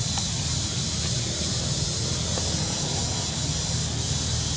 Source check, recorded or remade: recorded